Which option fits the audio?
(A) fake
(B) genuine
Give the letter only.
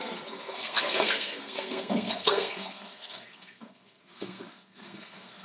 A